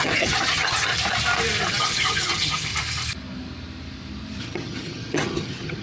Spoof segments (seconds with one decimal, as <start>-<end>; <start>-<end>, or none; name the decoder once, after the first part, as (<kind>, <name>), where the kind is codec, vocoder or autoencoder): 0.0-0.9 (vocoder, HiFi-GAN); 1.7-2.7; 4.4-5.8